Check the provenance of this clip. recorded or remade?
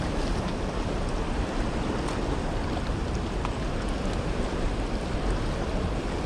recorded